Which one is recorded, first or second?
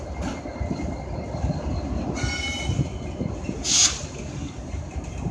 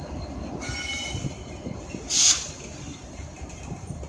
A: first